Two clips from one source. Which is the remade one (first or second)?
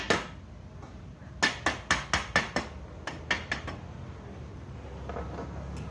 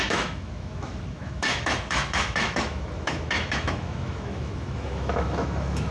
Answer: second